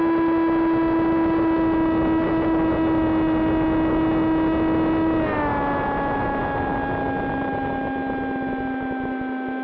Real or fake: real